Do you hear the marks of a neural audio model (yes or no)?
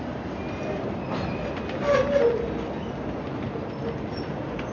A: no